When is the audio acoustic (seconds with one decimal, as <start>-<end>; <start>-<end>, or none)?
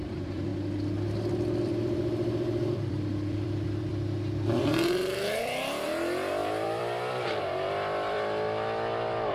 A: 0.5-1.6; 3.9-5.4